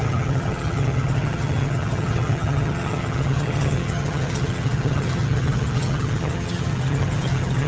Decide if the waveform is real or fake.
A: fake